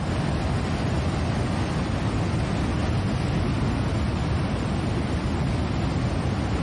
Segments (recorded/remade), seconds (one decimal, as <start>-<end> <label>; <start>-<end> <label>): 0.0-6.6 recorded